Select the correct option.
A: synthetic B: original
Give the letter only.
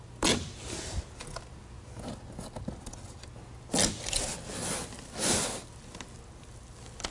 B